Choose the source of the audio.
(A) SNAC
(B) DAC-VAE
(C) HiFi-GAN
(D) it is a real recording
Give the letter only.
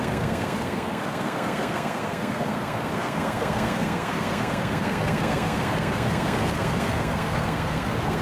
A